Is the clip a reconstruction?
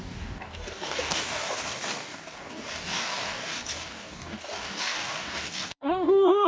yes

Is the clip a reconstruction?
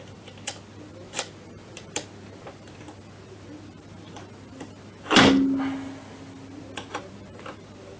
no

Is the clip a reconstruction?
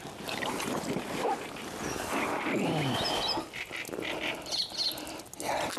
no